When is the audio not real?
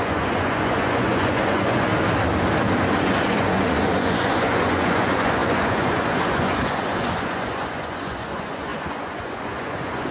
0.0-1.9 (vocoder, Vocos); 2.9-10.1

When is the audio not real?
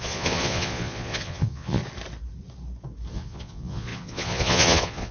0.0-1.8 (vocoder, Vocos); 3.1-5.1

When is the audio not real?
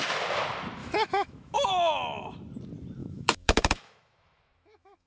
0.8-1.7 (autoencoder, DAC-VAE); 3.0-5.1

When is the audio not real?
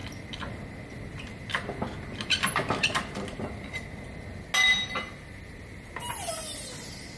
none